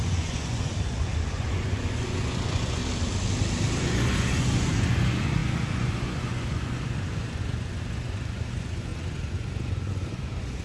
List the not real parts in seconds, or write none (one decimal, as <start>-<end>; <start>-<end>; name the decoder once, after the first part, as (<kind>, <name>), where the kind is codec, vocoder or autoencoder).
0.0-2.8 (vocoder, Vocos); 3.8-10.6